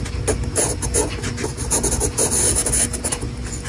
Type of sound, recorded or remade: recorded